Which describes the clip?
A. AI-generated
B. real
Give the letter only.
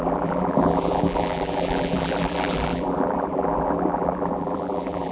A